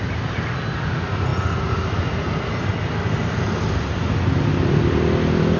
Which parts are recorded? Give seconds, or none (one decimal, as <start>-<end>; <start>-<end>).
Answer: 0.0-5.6

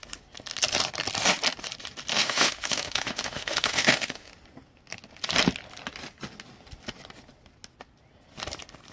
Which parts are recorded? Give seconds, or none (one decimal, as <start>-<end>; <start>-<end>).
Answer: 0.0-2.1; 4.3-8.9

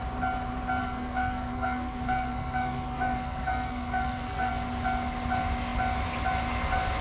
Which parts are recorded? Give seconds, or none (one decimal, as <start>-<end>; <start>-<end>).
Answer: 0.0-0.8; 4.5-7.0